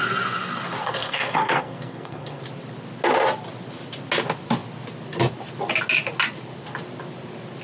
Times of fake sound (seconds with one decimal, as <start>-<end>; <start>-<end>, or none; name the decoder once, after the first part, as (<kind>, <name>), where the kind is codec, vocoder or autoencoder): 0.8-2.4 (codec, SNAC)